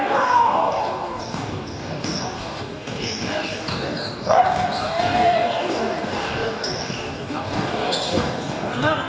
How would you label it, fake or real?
fake